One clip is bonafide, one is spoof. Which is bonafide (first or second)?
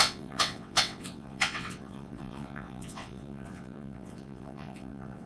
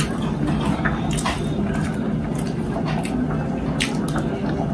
second